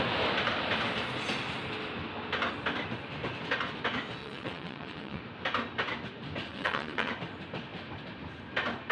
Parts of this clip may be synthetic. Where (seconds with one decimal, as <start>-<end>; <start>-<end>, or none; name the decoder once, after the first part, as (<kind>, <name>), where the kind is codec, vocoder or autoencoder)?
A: 4.2-5.2 (vocoder, WaveNeXt); 6.5-7.1

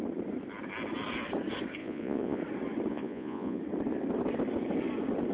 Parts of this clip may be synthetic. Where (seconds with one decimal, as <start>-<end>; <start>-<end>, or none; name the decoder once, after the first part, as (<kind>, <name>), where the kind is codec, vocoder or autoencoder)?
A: 1.8-2.4 (vocoder, Vocos); 2.9-3.6

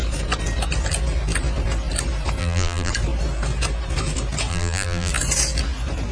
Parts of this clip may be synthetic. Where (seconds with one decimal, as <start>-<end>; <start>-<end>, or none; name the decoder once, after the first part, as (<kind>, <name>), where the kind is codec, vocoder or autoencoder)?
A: 2.4-2.9 (vocoder, BigVGAN v2); 4.5-5.1

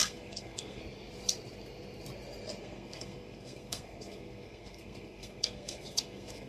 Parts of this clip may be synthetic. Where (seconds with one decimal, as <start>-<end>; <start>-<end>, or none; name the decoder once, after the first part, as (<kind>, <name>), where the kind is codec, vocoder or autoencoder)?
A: 0.0-0.8 (codec, SNAC); 2.6-6.5

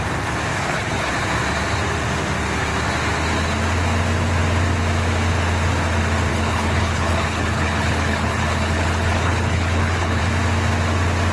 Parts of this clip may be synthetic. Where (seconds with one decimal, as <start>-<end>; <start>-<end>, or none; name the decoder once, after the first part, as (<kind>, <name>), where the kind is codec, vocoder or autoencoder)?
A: 0.5-1.1 (codec, HILCodec); 6.3-10.2

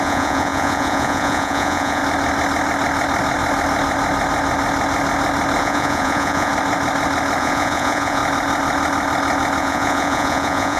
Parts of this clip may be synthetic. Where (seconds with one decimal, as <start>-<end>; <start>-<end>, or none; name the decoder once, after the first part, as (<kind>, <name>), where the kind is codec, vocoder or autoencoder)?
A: 0.0-2.0 (vocoder, Vocos); 5.6-6.5; 7.4-8.2; 9.6-10.8

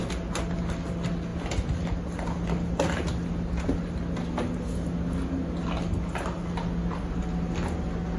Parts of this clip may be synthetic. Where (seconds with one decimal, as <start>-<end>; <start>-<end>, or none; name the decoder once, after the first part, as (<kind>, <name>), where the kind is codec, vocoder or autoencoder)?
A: none